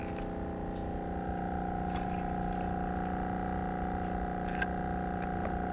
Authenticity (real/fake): real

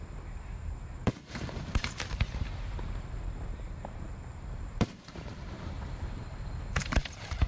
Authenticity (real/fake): fake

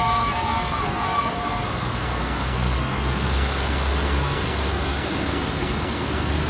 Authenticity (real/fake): fake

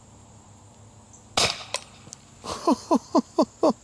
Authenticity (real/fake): real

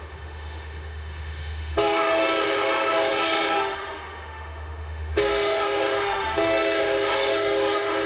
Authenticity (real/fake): fake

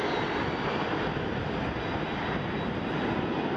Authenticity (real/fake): real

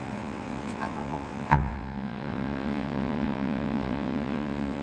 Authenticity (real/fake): fake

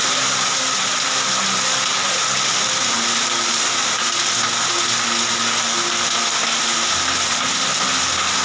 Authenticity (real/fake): real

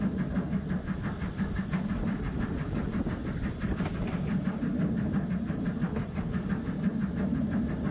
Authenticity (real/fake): real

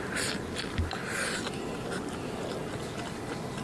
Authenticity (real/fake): real